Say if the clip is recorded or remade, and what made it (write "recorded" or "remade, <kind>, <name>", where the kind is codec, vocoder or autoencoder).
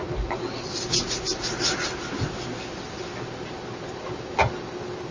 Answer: recorded